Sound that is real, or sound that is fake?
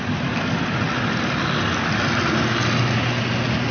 real